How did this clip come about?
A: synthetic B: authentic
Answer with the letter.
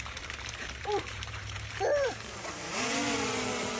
A